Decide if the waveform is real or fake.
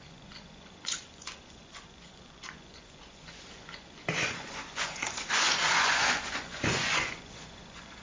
fake